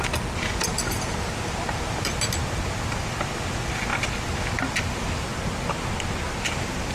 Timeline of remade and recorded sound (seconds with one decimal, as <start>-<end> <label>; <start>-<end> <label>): 0.0-0.7 recorded; 0.7-1.3 remade; 1.3-6.9 recorded